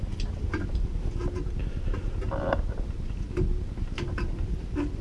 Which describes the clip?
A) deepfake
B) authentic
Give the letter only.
B